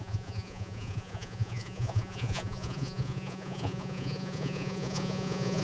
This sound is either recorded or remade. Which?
remade